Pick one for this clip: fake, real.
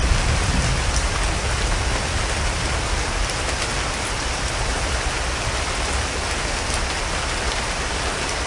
real